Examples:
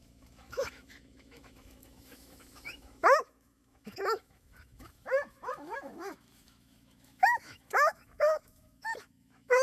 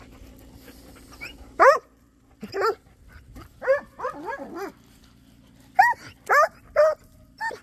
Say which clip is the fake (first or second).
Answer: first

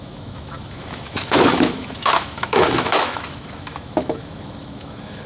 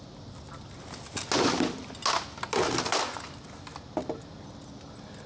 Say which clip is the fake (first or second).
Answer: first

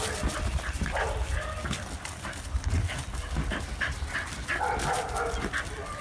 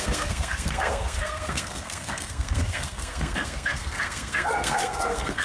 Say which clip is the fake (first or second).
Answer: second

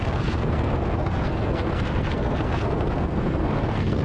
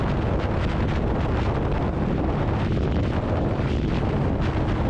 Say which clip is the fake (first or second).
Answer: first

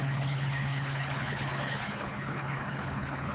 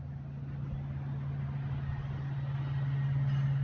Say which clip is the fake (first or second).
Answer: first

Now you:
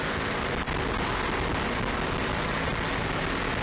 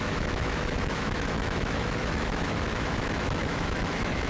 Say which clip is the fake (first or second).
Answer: second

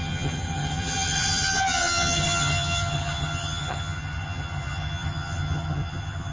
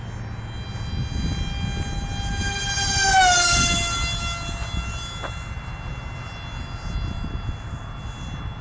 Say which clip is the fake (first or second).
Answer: first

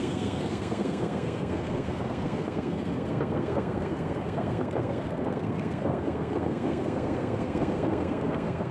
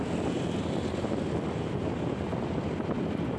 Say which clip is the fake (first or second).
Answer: first